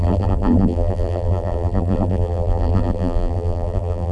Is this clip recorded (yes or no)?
no